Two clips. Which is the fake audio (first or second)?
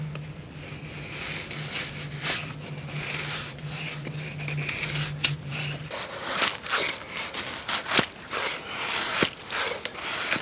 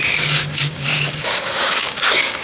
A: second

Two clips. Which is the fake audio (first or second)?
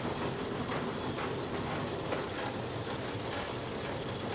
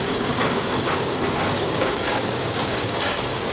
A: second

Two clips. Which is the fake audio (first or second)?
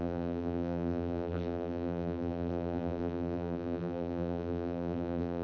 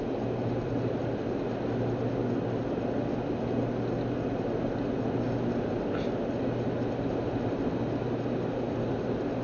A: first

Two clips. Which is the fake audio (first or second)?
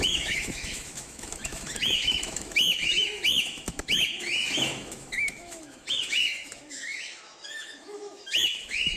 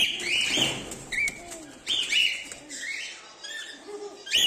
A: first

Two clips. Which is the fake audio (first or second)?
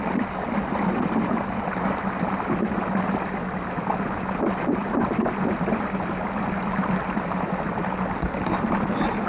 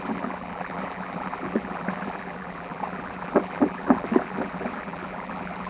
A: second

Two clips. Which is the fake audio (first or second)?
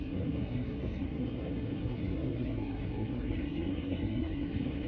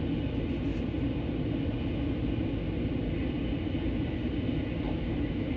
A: first